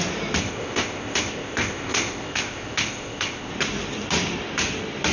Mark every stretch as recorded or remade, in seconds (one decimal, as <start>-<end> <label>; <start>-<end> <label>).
0.0-0.4 recorded; 0.4-3.5 remade; 3.5-5.1 recorded

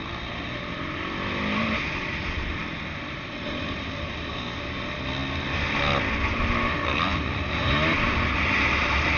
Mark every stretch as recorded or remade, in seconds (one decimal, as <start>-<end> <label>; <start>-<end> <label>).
0.0-9.2 recorded

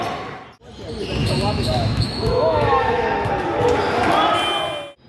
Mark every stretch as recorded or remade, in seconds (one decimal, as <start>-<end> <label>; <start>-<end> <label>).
0.0-1.2 recorded; 1.2-3.3 remade; 3.3-5.1 recorded

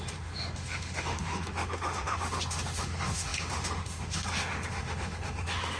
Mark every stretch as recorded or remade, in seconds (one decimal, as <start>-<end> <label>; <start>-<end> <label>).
0.0-5.8 remade